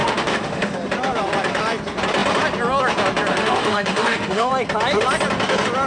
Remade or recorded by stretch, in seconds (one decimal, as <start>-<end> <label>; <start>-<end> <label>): 0.0-0.7 remade; 0.7-3.3 recorded; 3.3-4.5 remade; 4.5-5.9 recorded